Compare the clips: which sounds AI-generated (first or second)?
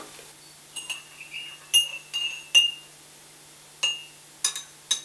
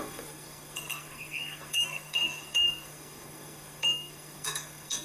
second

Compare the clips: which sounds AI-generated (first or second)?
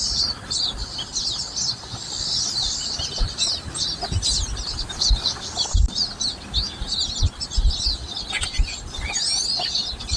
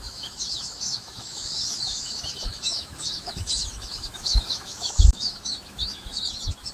second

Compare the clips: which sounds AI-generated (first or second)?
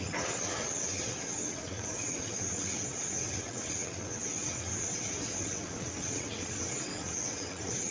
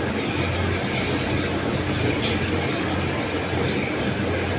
first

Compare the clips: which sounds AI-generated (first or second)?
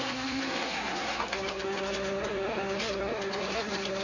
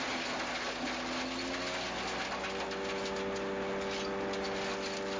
first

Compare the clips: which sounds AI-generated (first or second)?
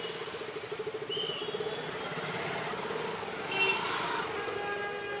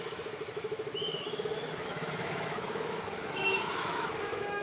second